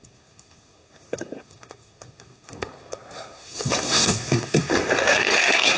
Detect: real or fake fake